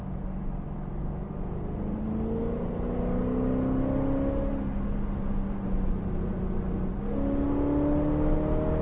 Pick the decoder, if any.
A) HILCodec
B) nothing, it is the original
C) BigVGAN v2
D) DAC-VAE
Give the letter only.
B